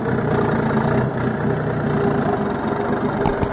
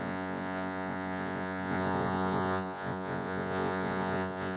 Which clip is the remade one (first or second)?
second